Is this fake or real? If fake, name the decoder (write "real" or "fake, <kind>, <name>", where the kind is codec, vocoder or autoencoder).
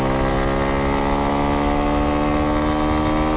real